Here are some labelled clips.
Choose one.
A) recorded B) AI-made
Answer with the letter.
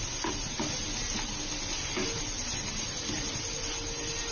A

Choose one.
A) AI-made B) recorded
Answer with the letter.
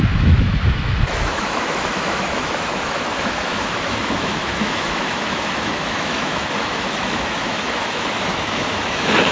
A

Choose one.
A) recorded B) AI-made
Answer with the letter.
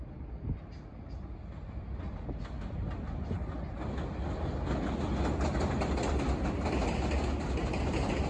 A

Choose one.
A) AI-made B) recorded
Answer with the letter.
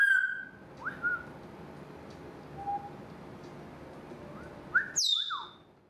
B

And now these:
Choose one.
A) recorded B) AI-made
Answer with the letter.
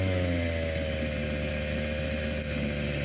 A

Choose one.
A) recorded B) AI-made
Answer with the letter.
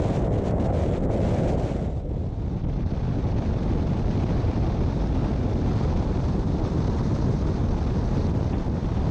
A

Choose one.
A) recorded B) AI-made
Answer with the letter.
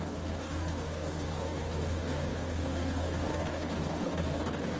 B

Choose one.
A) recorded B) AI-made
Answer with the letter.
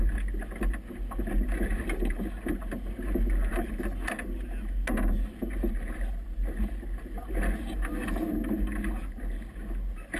A